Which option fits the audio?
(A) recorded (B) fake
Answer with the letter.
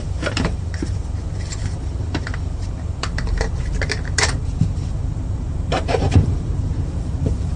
B